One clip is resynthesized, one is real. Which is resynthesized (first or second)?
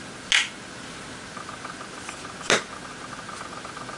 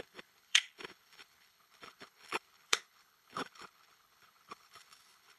second